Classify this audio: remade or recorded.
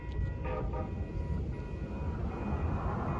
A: recorded